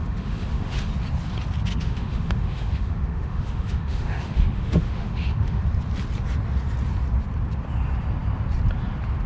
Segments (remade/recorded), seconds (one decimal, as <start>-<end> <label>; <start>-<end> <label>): 0.0-0.9 remade; 0.9-1.7 recorded; 1.7-5.6 remade; 5.6-9.3 recorded